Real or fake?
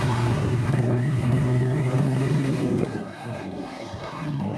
fake